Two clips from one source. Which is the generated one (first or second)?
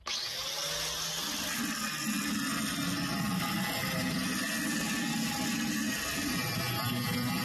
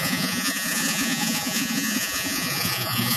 second